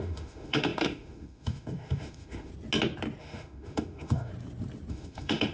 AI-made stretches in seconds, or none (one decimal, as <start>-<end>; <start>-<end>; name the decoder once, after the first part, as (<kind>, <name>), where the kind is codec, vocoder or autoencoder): 0.0-2.5 (autoencoder, DAC-VAE); 3.2-4.3; 4.9-5.5